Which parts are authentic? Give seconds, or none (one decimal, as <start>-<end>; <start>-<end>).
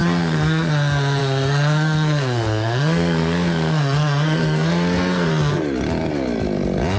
0.7-1.2; 5.3-7.0